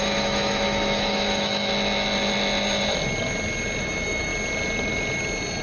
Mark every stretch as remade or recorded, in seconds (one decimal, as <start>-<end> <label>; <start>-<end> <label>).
0.0-1.7 remade; 1.7-3.8 recorded; 3.8-4.3 remade; 4.3-5.6 recorded